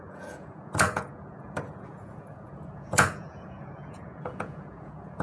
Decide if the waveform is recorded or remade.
remade